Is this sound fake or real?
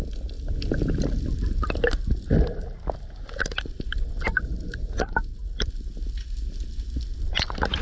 real